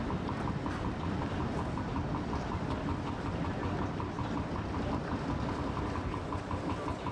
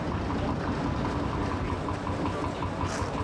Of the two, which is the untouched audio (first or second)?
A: second